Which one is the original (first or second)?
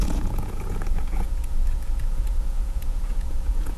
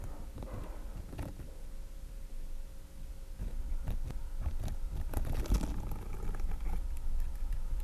second